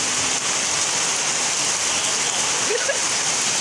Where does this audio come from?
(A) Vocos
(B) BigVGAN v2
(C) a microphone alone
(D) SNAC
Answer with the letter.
C